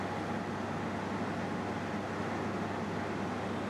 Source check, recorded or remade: recorded